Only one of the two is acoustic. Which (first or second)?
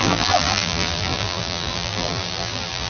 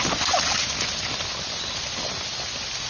second